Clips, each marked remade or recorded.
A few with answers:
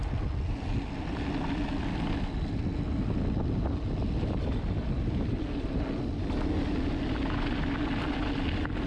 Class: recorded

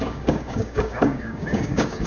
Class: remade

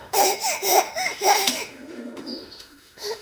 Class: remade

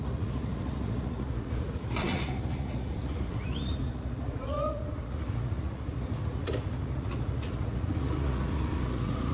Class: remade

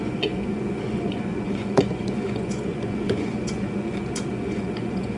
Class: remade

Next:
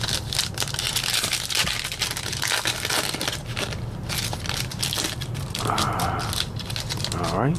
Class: recorded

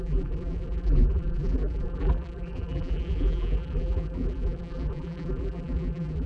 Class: remade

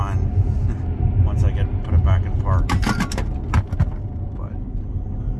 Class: recorded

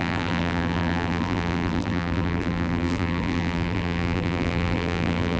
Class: remade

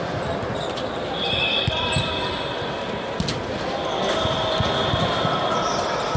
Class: recorded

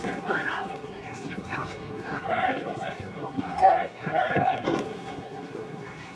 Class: remade